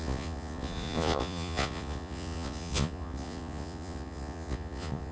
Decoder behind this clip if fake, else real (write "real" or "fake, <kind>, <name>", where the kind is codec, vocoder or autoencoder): fake, vocoder, Vocos